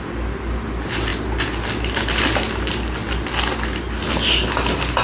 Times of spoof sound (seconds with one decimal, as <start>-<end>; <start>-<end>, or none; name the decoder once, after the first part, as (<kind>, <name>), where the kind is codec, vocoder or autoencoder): none